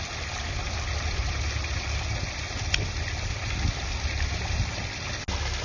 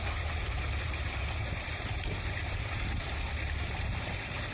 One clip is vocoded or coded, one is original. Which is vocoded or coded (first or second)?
second